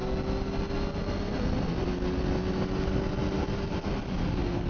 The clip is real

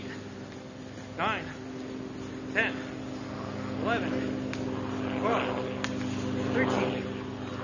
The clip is real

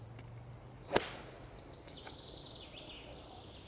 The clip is real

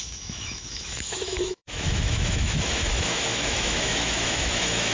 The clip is fake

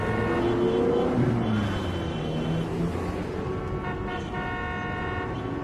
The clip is real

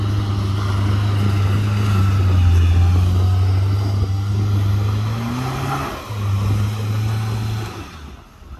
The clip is real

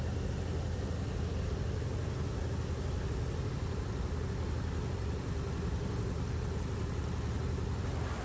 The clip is real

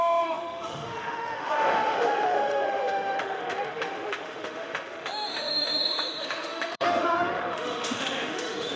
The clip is fake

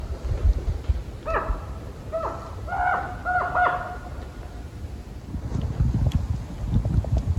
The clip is real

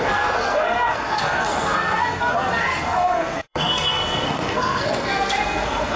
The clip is fake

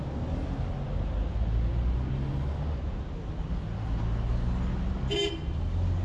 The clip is real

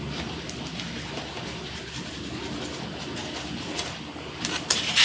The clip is real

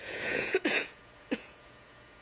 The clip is fake